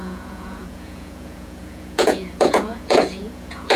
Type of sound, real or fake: fake